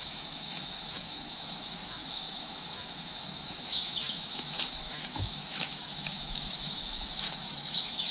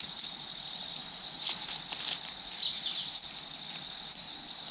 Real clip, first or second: second